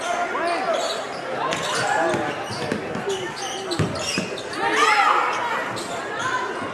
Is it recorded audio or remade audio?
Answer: recorded